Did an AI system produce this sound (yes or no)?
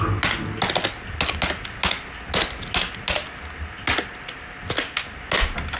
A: no